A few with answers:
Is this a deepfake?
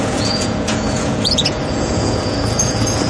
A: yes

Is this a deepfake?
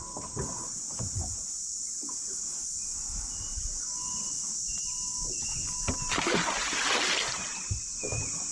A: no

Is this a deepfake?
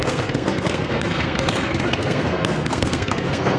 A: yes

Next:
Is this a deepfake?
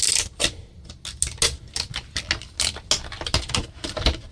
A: no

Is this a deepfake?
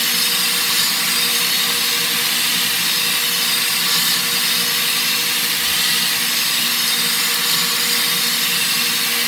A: no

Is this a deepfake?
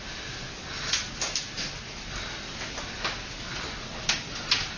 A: no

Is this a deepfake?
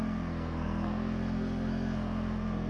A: yes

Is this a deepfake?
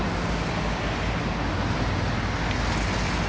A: no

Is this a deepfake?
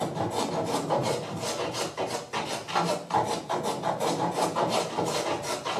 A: no